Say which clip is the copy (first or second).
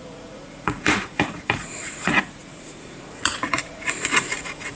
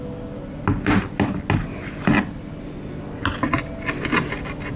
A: first